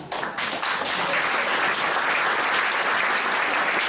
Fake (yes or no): no